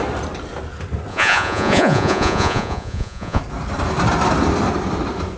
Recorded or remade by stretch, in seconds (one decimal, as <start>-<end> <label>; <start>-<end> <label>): 0.0-1.1 recorded; 1.1-3.4 remade; 3.4-5.4 recorded

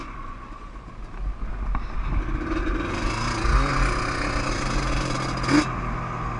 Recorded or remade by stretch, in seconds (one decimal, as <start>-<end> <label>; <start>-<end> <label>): 0.0-0.7 remade; 0.7-6.4 recorded

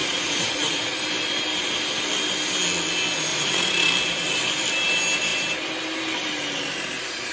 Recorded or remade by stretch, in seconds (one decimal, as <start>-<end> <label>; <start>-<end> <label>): 0.0-1.0 remade; 1.0-3.3 recorded; 3.3-3.9 remade; 3.9-7.3 recorded